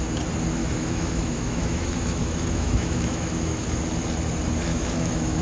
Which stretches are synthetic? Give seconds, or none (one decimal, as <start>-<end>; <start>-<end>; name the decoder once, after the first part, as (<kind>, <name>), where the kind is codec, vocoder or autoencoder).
0.6-3.8 (autoencoder, DAC-VAE); 4.7-5.4